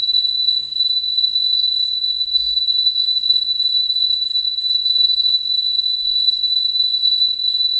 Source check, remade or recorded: remade